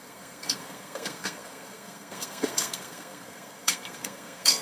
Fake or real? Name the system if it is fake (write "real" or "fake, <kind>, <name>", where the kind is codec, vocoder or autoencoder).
fake, codec, SNAC